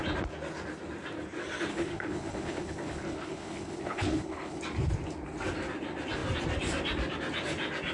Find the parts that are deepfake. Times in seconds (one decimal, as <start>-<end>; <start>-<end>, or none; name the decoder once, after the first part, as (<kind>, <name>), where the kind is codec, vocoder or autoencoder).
1.7-4.6 (codec, HILCodec)